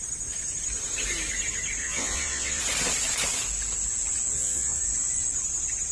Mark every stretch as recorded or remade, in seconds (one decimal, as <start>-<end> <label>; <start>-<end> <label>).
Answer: 0.0-1.8 recorded; 1.8-2.6 remade; 2.6-4.3 recorded; 4.3-4.8 remade; 4.8-5.9 recorded